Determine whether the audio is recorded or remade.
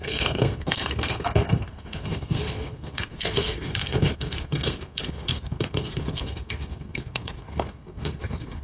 remade